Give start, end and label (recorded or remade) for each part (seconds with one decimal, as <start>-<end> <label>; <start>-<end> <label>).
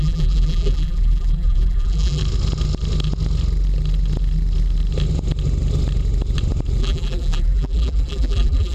0.0-2.2 remade; 2.2-6.8 recorded; 6.8-8.7 remade